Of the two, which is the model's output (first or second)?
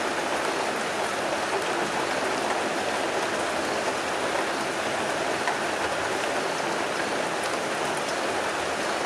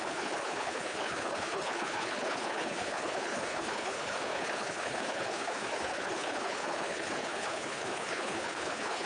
second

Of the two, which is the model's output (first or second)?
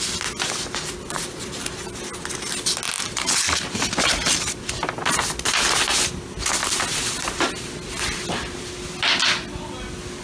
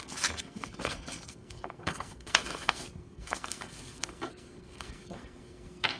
second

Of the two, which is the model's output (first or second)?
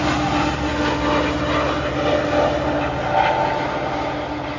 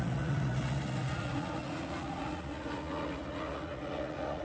second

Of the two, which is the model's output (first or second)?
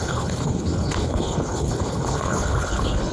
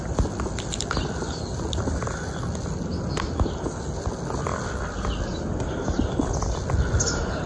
first